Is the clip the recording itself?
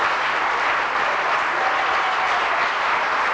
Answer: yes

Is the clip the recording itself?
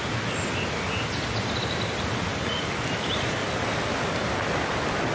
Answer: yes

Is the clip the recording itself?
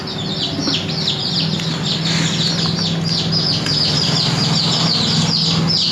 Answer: yes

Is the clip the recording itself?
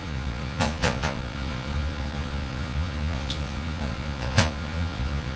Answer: no